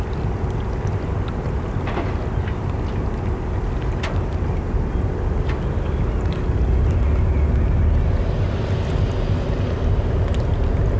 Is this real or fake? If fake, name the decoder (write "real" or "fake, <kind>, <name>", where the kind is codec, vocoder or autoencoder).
real